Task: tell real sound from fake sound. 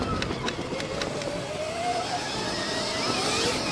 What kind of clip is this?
real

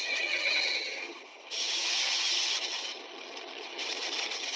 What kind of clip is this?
fake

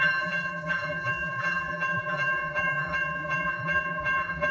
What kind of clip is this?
fake